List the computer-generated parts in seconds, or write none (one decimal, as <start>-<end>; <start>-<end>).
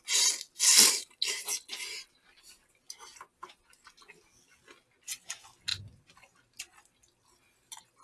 none